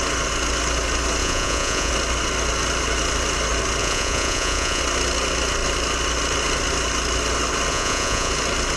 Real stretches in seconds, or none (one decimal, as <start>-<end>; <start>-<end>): 0.0-1.2; 1.9-3.8; 4.8-7.7; 8.3-8.8